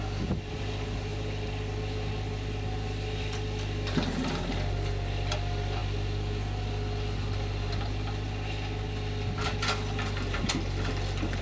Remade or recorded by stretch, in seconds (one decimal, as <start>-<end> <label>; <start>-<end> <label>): 0.0-11.4 recorded